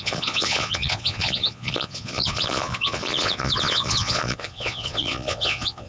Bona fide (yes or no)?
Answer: no